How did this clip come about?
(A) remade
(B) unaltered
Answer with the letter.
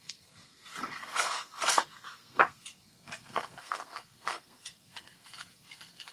A